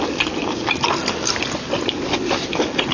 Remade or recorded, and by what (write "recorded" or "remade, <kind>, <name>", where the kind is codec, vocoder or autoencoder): recorded